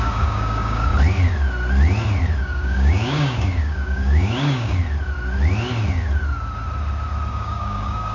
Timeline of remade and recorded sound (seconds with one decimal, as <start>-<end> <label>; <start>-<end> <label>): 0.0-0.9 remade; 0.9-2.4 recorded; 2.4-4.8 remade; 4.8-7.3 recorded; 7.3-8.1 remade